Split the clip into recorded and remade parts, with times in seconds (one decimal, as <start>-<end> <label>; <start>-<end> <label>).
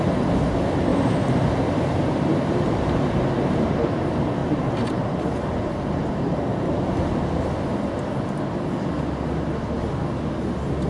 0.0-0.9 recorded; 0.9-3.7 remade; 3.7-4.4 recorded; 4.4-5.5 remade; 5.5-10.9 recorded